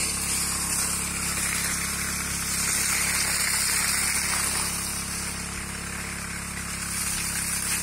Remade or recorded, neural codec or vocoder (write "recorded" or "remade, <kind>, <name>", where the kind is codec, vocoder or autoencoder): recorded